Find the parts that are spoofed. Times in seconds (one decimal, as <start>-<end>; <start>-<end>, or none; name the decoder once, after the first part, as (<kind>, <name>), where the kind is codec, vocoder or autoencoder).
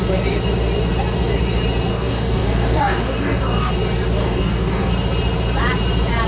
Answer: 1.9-3.7 (codec, DAC); 4.2-4.9